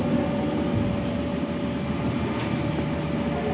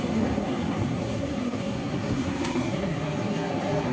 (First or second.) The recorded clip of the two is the first